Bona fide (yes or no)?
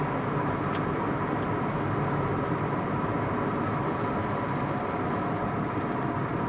yes